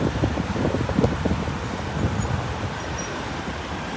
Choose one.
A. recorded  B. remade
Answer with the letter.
A